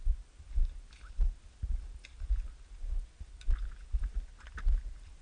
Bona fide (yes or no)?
yes